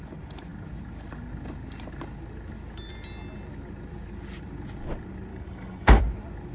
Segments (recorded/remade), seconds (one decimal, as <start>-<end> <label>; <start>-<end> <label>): 0.0-5.3 recorded; 5.3-6.0 remade; 6.0-6.5 recorded